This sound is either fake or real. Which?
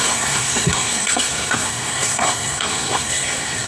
fake